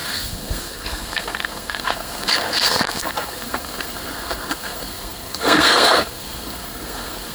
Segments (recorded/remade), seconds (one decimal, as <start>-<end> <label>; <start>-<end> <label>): 0.0-7.3 remade